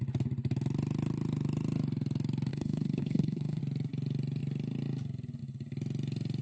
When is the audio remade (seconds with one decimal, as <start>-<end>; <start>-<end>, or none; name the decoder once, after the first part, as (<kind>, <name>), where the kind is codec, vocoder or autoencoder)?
2.5-3.6 (codec, HILCodec)

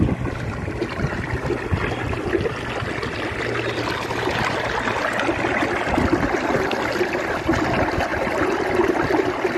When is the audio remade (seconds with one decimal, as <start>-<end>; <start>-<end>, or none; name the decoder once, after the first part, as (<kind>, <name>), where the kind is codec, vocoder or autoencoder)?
none

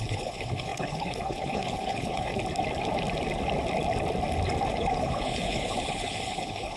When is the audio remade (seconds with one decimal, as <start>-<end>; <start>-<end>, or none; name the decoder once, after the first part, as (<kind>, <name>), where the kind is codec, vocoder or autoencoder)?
0.0-2.3 (codec, HILCodec); 4.7-6.8

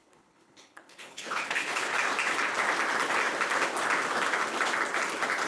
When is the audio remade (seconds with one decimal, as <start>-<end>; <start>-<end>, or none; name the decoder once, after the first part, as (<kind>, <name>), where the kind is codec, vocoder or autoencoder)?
0.0-1.9 (codec, HILCodec)

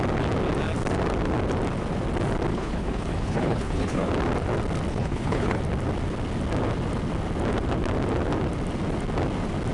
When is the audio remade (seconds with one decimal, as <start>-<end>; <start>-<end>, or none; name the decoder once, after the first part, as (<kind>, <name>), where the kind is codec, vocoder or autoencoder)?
2.5-4.1 (codec, HILCodec); 4.9-5.6

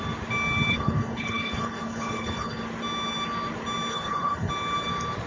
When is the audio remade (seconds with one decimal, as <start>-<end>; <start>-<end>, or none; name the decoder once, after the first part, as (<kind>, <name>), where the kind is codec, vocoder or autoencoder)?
0.7-2.6 (codec, HILCodec); 3.9-4.5